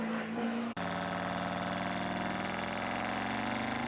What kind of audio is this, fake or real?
real